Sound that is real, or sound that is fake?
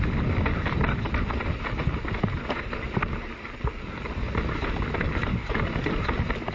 real